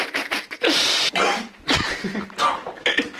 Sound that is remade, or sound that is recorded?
remade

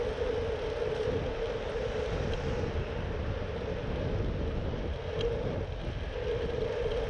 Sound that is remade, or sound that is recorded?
recorded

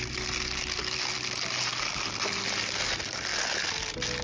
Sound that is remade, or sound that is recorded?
recorded